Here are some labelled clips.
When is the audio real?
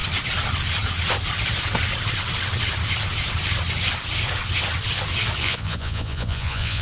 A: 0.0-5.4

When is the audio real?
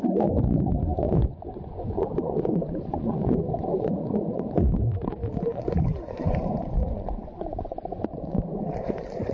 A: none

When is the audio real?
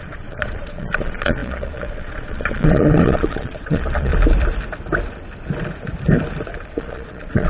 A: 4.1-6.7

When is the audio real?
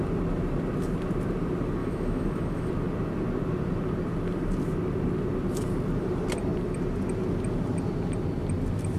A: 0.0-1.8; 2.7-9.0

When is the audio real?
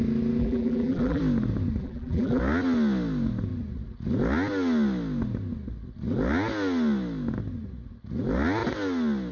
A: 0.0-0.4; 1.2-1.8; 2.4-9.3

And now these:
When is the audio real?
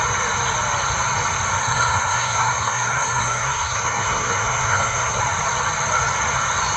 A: 0.0-1.6; 5.2-6.8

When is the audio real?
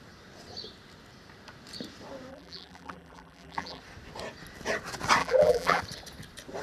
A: 0.0-2.3; 3.8-5.2; 5.8-6.6